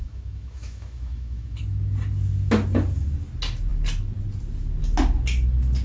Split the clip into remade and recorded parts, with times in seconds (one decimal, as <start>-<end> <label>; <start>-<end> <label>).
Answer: 0.0-1.6 remade; 1.6-5.8 recorded

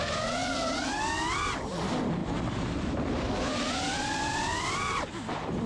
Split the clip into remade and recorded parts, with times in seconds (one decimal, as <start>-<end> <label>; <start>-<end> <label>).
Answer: 0.0-2.2 recorded; 2.2-5.7 remade